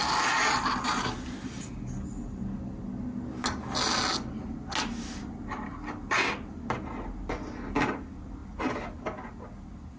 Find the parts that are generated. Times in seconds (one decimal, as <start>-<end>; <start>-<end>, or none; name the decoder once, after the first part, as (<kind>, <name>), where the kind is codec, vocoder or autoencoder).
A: none